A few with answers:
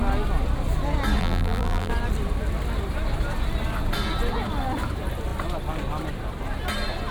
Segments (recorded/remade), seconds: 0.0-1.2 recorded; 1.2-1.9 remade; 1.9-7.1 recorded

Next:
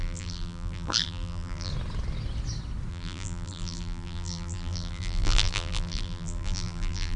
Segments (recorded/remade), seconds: 0.0-1.7 remade; 1.7-2.9 recorded; 2.9-7.2 remade

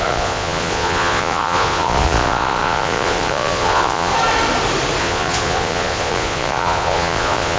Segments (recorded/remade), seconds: 0.0-4.1 remade; 4.1-5.0 recorded; 5.0-7.6 remade

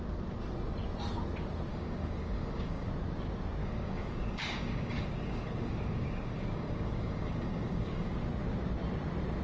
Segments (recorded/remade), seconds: 0.0-1.7 recorded; 1.7-2.9 remade; 2.9-3.6 recorded; 3.6-8.1 remade; 8.1-9.4 recorded

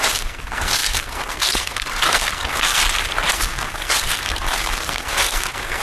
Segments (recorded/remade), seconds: 0.0-2.8 remade; 2.8-3.3 recorded; 3.3-5.8 remade

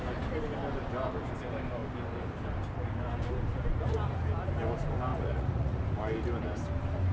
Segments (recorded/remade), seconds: 0.0-5.1 recorded; 5.1-5.8 remade; 5.8-7.1 recorded

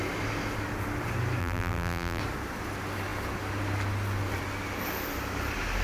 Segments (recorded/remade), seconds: 0.0-1.4 recorded; 1.4-2.2 remade; 2.2-5.8 recorded